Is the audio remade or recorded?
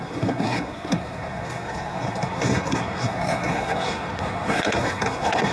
remade